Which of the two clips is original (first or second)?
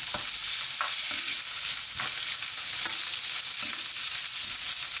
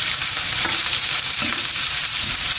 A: first